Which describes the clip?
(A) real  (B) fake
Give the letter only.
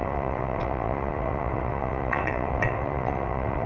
B